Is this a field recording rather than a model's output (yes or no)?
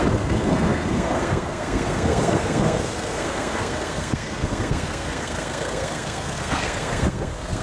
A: no